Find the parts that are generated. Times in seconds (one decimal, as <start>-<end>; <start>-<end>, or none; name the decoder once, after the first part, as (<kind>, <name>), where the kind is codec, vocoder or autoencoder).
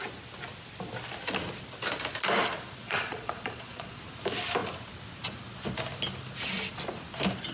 2.8-4.0 (vocoder, Vocos)